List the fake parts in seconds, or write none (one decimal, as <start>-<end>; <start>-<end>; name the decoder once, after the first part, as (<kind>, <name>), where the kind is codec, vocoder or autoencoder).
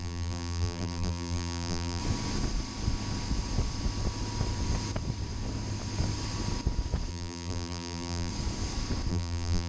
0.0-2.0 (vocoder, BigVGAN v2); 7.1-8.3; 9.1-9.7